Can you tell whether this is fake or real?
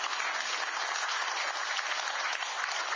real